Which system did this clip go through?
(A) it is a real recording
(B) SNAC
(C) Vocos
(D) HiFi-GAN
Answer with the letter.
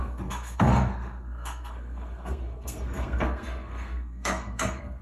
B